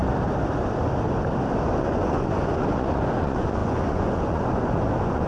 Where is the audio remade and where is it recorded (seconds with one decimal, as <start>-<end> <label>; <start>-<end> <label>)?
0.0-1.8 recorded; 1.8-5.3 remade

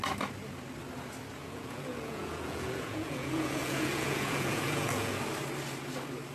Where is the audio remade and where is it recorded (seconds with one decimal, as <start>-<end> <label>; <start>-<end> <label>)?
0.0-1.4 recorded; 1.4-5.2 remade; 5.2-6.3 recorded